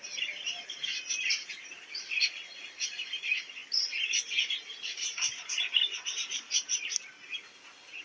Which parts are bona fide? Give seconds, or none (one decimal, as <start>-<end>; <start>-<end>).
3.6-4.5